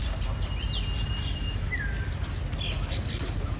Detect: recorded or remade recorded